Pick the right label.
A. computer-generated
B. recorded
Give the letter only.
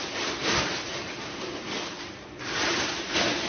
B